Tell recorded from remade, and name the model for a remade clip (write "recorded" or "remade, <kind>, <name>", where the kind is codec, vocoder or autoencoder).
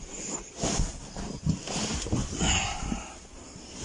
recorded